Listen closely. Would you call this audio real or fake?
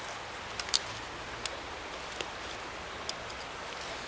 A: real